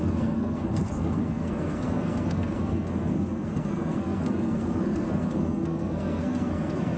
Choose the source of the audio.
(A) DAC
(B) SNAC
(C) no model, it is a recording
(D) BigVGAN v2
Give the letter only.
B